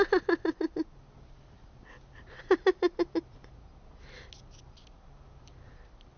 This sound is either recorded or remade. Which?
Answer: recorded